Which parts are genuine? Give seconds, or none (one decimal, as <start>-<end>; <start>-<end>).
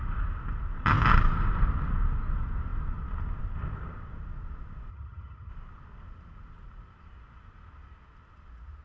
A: 0.0-4.9; 5.5-8.8